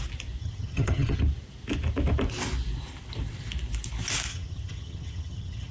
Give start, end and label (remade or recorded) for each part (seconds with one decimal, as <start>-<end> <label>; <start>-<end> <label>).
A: 0.0-0.4 recorded; 0.4-1.2 remade; 1.2-4.3 recorded; 4.3-5.7 remade